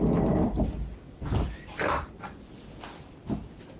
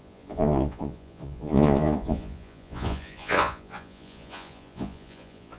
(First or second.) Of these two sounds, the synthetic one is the second